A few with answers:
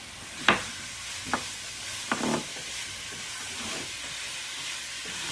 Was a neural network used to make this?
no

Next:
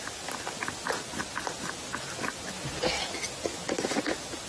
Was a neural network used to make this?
no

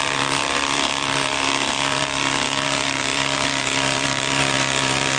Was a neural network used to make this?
yes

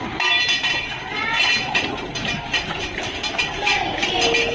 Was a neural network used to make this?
no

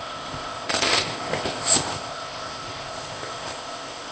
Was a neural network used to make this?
yes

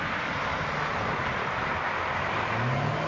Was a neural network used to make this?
no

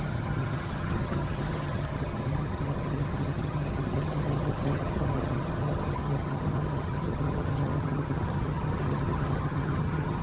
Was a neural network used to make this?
yes